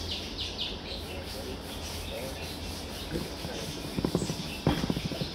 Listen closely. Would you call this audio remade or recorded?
recorded